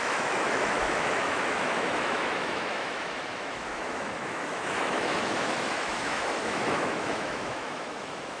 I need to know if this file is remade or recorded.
remade